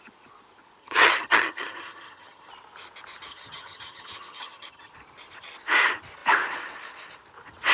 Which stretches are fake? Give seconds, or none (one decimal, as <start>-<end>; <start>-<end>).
0.8-2.5; 3.3-4.9